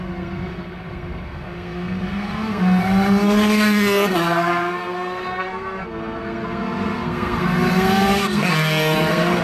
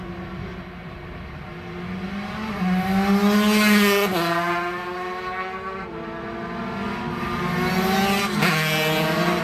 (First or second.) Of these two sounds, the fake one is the first